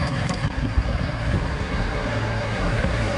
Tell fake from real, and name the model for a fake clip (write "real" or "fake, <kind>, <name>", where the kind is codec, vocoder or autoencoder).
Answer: fake, codec, SNAC